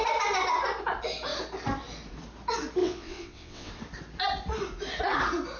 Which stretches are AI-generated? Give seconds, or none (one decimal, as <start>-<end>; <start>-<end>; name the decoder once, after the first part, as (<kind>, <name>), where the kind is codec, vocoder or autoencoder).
2.8-3.7 (vocoder, WaveNeXt)

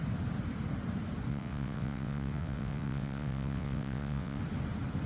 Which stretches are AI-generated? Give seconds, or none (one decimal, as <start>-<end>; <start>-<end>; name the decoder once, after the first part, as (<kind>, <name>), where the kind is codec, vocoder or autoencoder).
1.3-4.4 (vocoder, WaveNeXt)

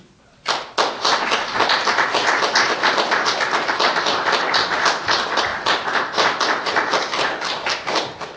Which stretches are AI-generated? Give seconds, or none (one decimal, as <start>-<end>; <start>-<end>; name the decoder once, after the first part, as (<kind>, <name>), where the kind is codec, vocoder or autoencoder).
none

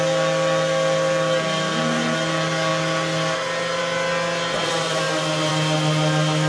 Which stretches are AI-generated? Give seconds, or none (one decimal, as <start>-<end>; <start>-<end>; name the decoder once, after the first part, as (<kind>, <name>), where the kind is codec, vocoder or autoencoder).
none

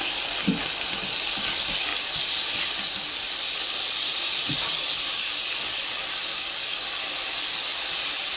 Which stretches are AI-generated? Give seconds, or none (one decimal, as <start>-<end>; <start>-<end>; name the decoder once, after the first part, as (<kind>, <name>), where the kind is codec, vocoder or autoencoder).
none

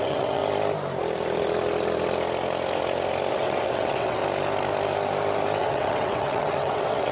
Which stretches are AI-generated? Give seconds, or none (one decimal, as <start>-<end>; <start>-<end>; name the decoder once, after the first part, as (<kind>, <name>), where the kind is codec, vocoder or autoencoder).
0.0-0.4 (vocoder, WaveNeXt); 3.3-4.2; 5.6-7.1

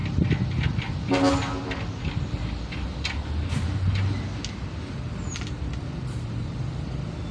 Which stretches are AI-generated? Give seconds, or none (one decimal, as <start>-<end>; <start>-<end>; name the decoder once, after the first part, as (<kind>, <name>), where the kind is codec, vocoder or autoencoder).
none

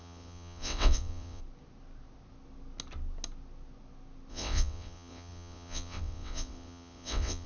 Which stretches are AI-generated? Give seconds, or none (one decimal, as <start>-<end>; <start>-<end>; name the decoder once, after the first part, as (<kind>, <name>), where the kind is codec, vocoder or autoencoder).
0.0-1.4 (vocoder, WaveNeXt); 4.3-7.5